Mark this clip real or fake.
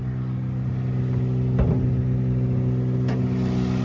real